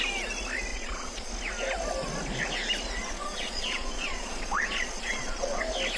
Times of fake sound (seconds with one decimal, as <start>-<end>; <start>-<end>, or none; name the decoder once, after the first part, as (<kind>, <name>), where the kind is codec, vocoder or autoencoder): 0.7-1.3 (vocoder, Vocos); 3.0-5.6